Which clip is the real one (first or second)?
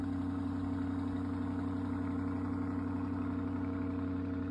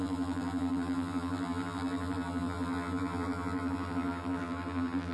first